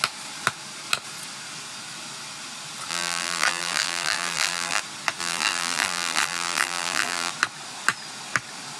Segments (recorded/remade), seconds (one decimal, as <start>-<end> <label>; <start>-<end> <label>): 0.0-2.9 recorded; 2.9-4.8 remade; 4.8-5.2 recorded; 5.2-7.3 remade; 7.3-8.8 recorded